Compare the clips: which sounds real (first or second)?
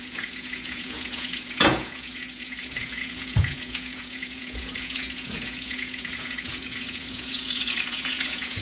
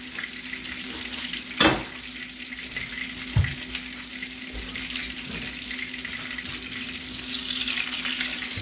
second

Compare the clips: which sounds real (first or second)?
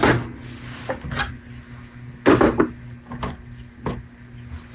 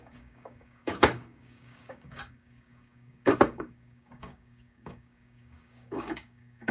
first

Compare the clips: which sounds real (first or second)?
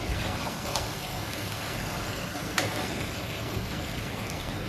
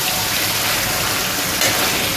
second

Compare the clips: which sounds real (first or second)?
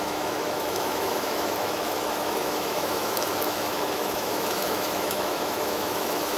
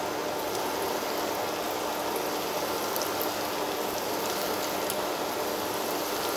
second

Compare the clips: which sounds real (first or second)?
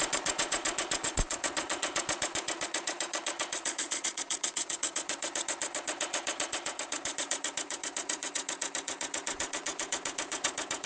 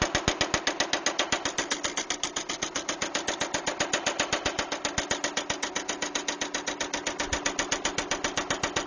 second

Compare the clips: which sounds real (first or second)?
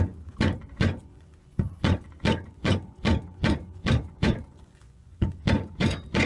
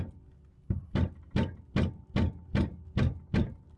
second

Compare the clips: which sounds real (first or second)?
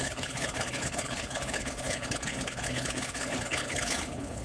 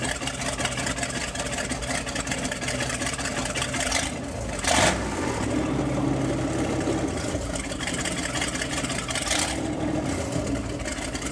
second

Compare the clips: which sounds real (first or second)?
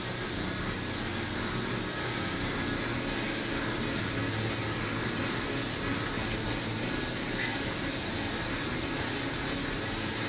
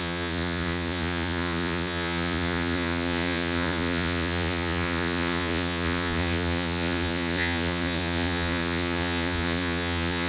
first